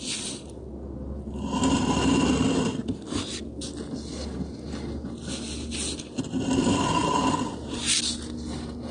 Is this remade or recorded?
recorded